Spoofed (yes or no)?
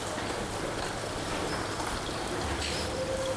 no